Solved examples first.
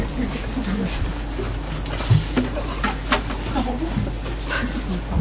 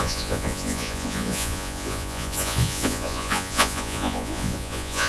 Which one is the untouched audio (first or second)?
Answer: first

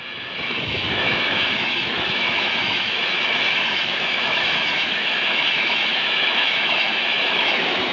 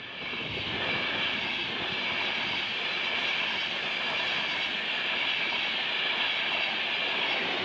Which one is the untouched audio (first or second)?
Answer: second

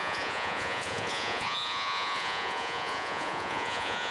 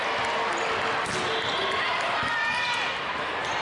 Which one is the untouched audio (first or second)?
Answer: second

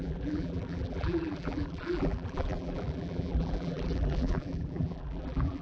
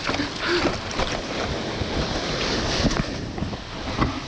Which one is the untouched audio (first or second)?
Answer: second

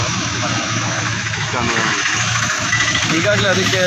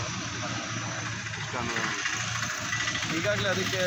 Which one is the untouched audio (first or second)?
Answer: second